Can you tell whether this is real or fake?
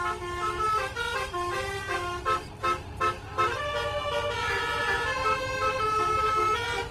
real